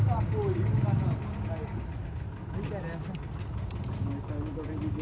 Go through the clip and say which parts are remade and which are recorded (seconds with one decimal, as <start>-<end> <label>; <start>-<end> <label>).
0.0-5.0 recorded